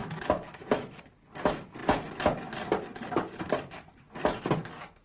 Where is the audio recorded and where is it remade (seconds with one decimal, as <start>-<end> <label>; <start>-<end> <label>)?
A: 0.0-1.0 remade; 1.0-5.0 recorded